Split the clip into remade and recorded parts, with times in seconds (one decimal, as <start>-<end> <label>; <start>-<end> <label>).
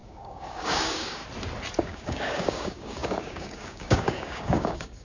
0.0-1.2 remade; 1.2-1.8 recorded; 1.8-5.0 remade